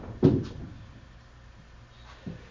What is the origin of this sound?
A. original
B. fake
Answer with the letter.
A